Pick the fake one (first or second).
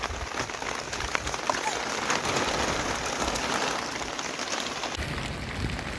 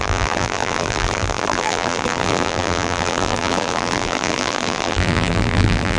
second